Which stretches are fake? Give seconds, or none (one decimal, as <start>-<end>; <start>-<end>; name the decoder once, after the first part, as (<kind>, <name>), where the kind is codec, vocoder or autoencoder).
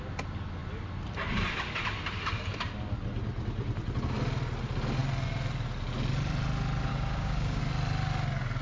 6.9-7.6 (codec, DAC)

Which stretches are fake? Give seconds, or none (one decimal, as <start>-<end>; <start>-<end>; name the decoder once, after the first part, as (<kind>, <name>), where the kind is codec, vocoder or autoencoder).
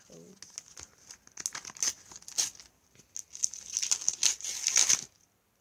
none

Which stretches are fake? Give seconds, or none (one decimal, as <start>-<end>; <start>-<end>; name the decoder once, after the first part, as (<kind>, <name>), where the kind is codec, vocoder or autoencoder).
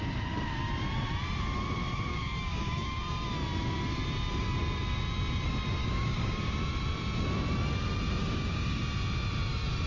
2.1-3.0 (codec, DAC); 5.8-6.5; 8.2-8.8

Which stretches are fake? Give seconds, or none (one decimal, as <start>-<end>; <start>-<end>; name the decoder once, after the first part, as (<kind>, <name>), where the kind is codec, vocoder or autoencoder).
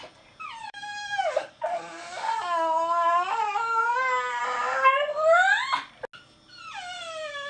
0.6-4.4 (codec, DAC)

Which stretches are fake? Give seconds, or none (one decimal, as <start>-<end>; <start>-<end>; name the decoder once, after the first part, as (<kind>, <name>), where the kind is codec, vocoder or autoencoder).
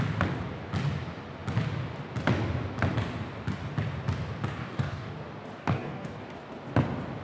4.6-5.1 (codec, DAC); 5.6-6.2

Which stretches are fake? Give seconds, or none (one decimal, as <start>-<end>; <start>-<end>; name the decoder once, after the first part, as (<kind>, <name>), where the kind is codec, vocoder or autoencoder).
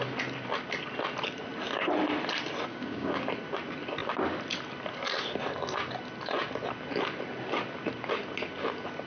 2.7-3.3 (codec, DAC)